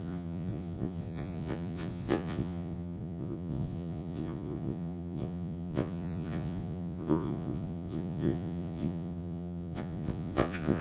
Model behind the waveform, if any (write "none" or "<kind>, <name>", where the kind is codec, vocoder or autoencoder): vocoder, Vocos